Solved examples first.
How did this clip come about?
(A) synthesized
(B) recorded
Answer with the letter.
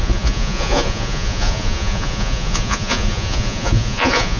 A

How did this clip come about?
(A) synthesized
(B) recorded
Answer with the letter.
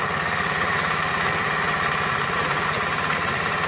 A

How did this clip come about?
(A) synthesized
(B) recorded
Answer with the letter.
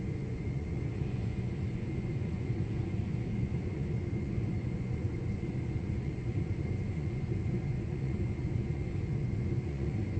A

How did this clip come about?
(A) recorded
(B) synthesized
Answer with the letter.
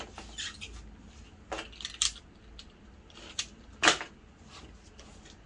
A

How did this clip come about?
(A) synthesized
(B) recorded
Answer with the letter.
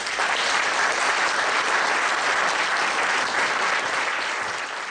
A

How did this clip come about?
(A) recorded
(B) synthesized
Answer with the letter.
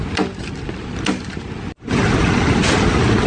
A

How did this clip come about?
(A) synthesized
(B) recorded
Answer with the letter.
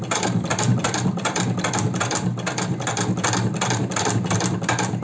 B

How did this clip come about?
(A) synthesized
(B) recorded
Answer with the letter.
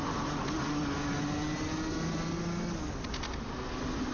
B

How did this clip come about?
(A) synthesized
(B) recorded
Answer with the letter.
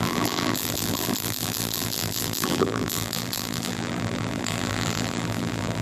A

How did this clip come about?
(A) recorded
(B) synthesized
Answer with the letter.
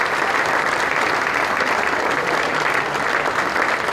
A